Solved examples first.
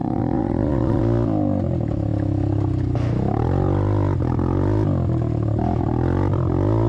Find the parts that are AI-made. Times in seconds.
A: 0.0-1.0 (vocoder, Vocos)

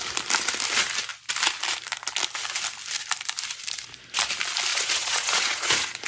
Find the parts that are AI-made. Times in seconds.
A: 4.7-6.1 (vocoder, Vocos)

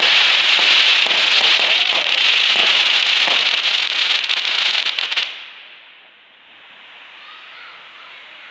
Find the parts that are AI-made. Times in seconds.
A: 0.0-8.5 (vocoder, Vocos)